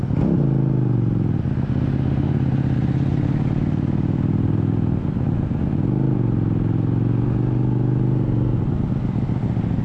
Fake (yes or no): no